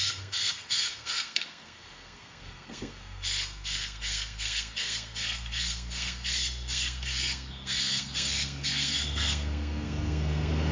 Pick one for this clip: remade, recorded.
remade